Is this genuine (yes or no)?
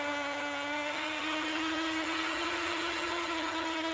no